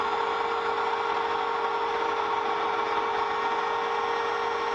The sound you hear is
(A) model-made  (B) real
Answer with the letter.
B